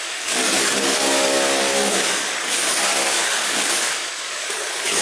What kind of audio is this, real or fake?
fake